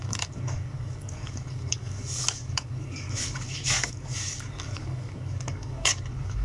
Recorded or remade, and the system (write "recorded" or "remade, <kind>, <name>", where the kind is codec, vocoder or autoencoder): remade, codec, DAC